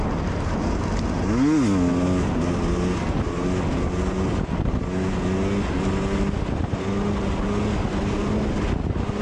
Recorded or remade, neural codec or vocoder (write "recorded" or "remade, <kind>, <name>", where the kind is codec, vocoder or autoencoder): recorded